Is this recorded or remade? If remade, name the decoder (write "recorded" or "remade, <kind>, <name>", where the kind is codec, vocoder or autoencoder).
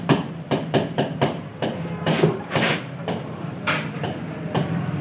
remade, vocoder, BigVGAN v2